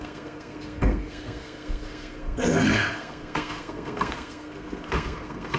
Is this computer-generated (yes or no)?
yes